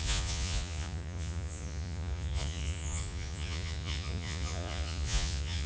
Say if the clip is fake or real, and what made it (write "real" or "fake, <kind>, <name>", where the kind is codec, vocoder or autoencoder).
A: fake, vocoder, Vocos